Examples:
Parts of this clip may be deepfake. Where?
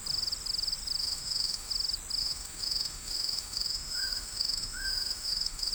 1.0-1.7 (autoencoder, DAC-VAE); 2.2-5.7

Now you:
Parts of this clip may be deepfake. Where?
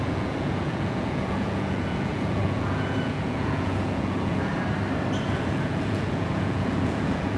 0.0-4.5 (vocoder, Vocos); 5.3-7.4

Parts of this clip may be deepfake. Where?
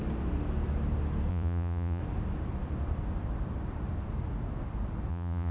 1.3-2.0 (vocoder, Vocos); 5.1-5.5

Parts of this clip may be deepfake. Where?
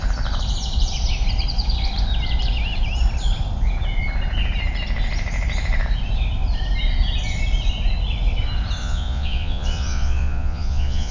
8.8-11.1 (vocoder, Vocos)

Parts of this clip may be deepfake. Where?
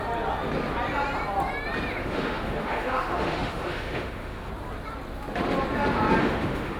2.0-4.5 (autoencoder, DAC-VAE); 6.2-6.8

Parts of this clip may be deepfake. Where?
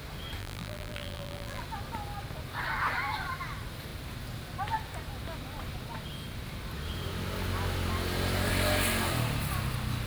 0.4-1.6 (vocoder, BigVGAN v2)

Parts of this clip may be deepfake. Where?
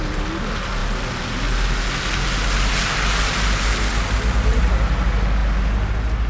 none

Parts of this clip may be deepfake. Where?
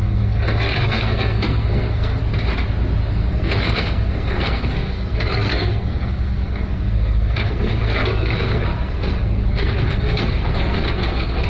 0.0-2.2 (codec, SNAC); 3.1-11.5